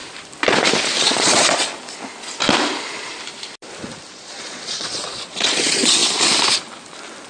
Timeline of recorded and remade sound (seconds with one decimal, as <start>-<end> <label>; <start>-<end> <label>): 0.0-1.0 recorded; 1.0-1.7 remade; 1.7-4.1 recorded; 4.1-6.0 remade; 6.0-7.3 recorded

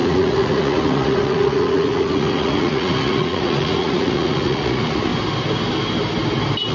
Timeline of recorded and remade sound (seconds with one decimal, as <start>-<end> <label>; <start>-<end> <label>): 0.0-5.1 remade; 5.1-6.7 recorded

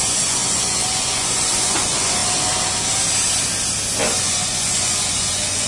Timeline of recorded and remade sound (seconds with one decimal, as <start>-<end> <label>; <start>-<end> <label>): 0.0-2.2 remade; 2.2-4.0 recorded; 4.0-5.7 remade

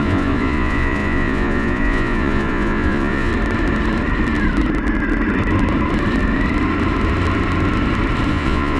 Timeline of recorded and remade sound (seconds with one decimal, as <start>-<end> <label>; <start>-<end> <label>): 0.0-3.3 remade; 3.3-8.3 recorded; 8.3-8.8 remade